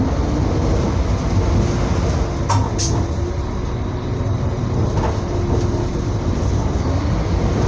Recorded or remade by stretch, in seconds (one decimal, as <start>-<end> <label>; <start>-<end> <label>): 0.0-7.7 recorded